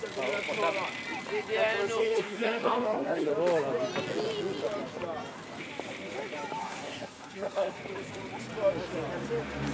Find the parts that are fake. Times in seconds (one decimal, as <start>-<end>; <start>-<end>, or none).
2.0-3.3; 6.6-7.8